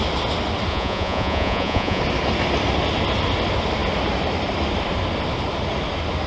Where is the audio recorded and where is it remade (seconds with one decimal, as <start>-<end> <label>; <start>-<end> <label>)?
0.0-0.7 recorded; 0.7-2.0 remade; 2.0-6.3 recorded